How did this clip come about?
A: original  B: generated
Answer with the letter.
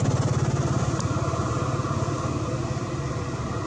A